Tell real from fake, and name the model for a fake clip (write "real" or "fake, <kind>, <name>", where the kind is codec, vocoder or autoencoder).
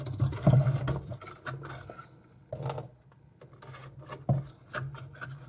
real